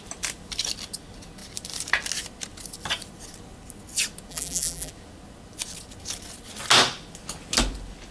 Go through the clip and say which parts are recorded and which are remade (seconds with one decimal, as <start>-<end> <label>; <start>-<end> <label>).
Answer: 0.0-4.3 recorded; 4.3-4.9 remade; 4.9-8.1 recorded